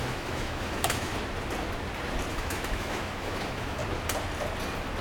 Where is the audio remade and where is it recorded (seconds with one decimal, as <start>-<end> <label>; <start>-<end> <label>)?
0.0-1.1 remade; 1.1-2.3 recorded; 2.3-3.8 remade; 3.8-5.0 recorded

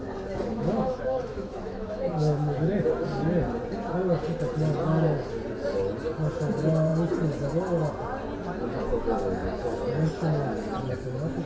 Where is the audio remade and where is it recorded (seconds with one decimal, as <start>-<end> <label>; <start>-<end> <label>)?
0.0-0.5 recorded; 0.5-2.9 remade; 2.9-11.5 recorded

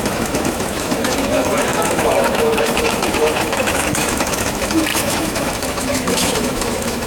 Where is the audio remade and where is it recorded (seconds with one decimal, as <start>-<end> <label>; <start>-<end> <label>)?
0.0-7.1 remade

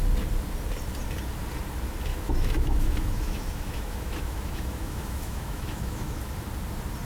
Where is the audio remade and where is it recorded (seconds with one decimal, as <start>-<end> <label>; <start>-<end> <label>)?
0.0-2.1 recorded; 2.1-6.2 remade; 6.2-7.1 recorded